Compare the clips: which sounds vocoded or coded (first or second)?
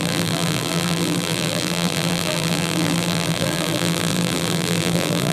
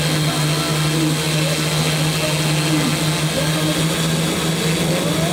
first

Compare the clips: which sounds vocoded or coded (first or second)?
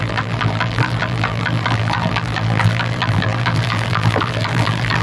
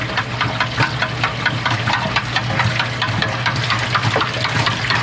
first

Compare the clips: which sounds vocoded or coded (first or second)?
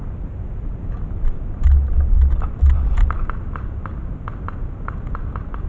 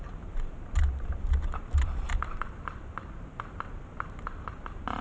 second